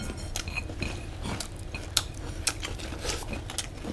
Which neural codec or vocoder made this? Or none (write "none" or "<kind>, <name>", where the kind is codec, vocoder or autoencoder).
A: none